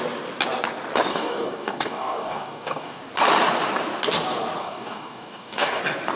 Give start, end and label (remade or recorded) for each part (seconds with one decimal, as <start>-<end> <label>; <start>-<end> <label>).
0.0-1.1 recorded; 1.1-3.0 remade; 3.0-4.6 recorded; 4.6-5.8 remade; 5.8-6.2 recorded

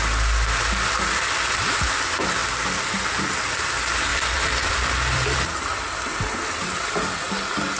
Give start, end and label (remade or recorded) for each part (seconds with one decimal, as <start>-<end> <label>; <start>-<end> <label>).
0.0-4.1 recorded; 4.1-7.8 remade

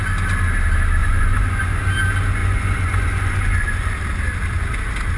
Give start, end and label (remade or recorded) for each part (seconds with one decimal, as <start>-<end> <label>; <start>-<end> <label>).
0.0-1.0 recorded; 1.0-1.8 remade; 1.8-2.4 recorded; 2.4-3.9 remade; 3.9-5.2 recorded

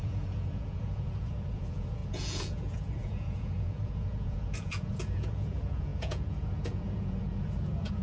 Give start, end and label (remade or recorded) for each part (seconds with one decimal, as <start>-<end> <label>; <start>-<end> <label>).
0.0-8.0 remade

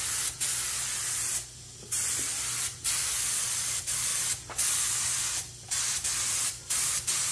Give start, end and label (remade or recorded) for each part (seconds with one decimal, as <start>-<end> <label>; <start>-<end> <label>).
0.0-7.3 recorded

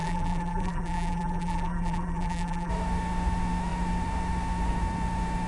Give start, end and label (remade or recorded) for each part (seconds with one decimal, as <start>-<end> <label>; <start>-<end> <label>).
0.0-2.7 remade; 2.7-5.5 recorded

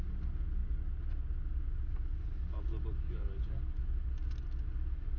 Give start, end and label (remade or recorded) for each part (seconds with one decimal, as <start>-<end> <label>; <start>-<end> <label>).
0.0-5.2 recorded

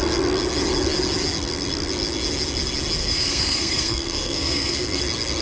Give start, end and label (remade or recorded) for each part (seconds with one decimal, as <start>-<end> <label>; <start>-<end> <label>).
0.0-3.0 recorded; 3.0-5.0 remade; 5.0-5.4 recorded